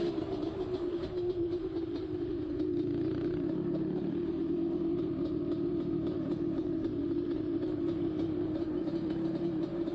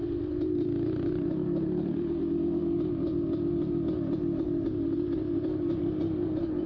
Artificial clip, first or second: first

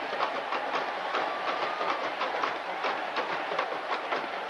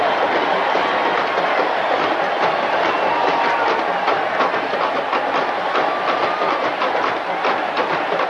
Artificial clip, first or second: first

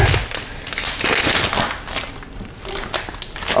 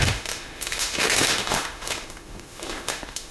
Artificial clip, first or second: second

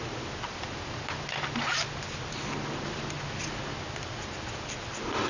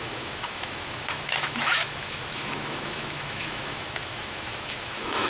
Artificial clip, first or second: second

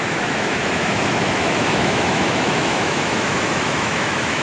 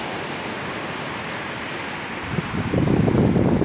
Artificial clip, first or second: first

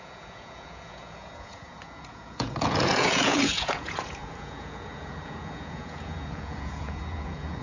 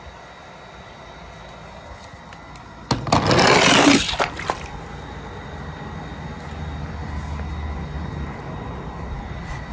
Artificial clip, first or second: first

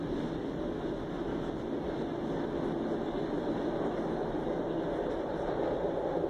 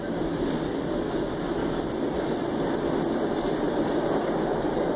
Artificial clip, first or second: second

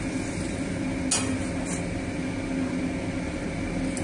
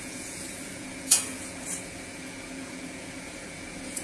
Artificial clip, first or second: second